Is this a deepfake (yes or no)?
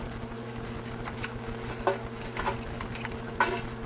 no